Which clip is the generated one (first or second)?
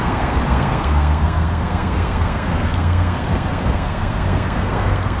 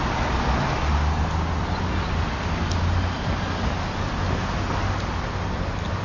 first